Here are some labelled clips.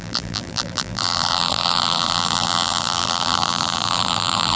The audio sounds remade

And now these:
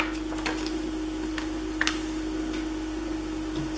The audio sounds recorded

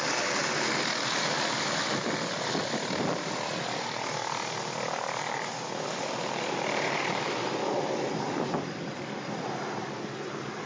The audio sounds recorded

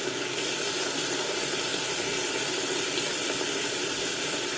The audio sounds recorded